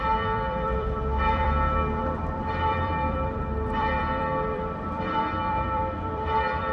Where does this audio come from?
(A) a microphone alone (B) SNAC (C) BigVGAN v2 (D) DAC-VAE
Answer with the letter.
C